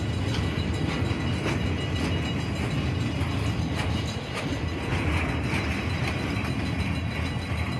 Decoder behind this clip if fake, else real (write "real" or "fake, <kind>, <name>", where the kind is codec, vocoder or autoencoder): real